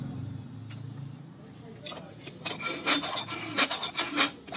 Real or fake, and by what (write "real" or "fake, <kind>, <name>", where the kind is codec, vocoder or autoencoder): real